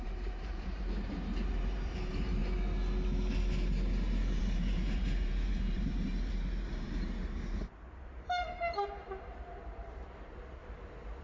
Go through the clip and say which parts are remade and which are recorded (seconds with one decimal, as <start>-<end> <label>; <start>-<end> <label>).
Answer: 0.0-2.4 remade; 2.4-4.4 recorded; 4.4-10.6 remade; 10.6-11.2 recorded